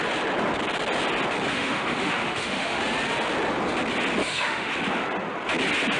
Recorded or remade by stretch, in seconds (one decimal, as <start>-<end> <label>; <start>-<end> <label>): 0.0-1.5 recorded; 1.5-2.8 remade; 2.8-4.2 recorded; 4.2-4.7 remade; 4.7-6.0 recorded